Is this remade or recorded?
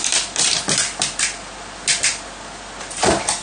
recorded